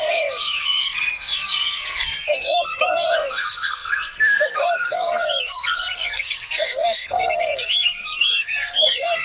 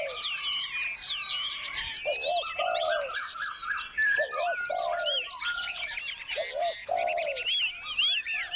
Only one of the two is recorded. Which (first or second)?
second